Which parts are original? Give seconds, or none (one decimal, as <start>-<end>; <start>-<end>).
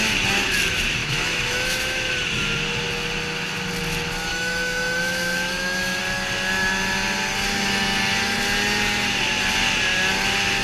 0.0-1.0; 2.1-4.3; 6.0-10.6